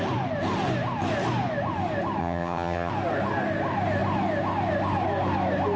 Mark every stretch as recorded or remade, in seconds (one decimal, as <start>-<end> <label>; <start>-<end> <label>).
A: 0.0-2.2 recorded; 2.2-2.9 remade; 2.9-5.8 recorded